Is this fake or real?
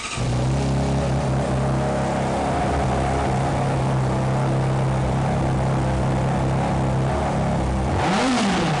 real